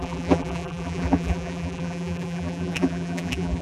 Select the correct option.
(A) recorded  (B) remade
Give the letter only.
B